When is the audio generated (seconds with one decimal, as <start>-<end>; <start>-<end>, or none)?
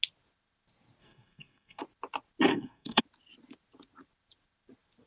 1.0-1.8; 2.5-3.0